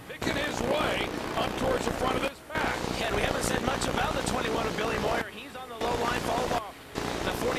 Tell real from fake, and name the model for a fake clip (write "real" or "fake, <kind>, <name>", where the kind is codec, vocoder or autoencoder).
real